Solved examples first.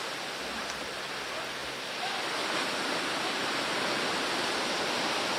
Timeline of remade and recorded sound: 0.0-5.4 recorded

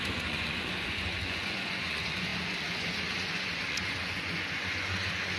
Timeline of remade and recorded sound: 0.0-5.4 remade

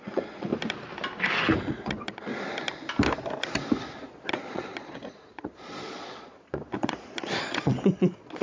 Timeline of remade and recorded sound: 0.0-0.5 remade; 0.5-1.6 recorded; 1.6-2.3 remade; 2.3-4.0 recorded; 4.0-8.4 remade

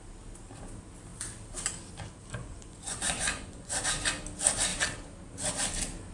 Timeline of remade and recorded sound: 0.0-2.3 recorded; 2.3-3.7 remade; 3.7-6.1 recorded

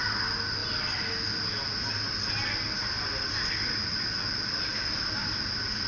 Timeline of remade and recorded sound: 0.0-5.9 recorded

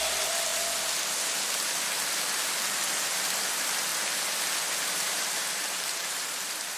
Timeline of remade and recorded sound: 0.0-6.8 recorded

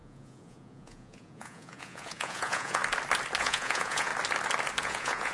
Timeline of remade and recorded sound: 0.0-2.8 remade; 2.8-3.4 recorded; 3.4-4.1 remade; 4.1-4.8 recorded; 4.8-5.3 remade